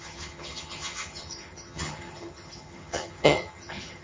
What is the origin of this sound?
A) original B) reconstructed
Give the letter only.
B